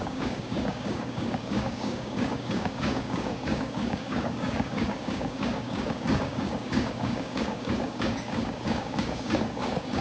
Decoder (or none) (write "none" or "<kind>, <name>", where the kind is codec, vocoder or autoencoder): codec, DAC